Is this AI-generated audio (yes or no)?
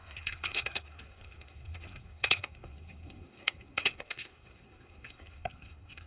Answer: yes